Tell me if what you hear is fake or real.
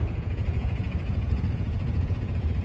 fake